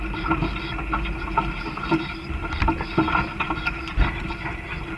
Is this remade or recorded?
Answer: recorded